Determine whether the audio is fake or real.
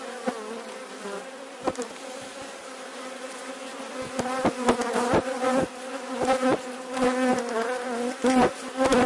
real